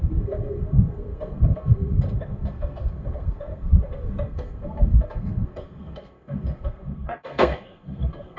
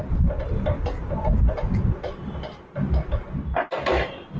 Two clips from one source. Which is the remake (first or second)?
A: first